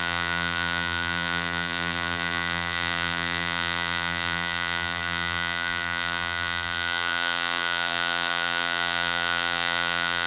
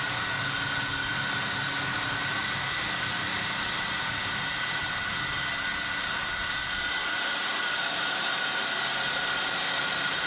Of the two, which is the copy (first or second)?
first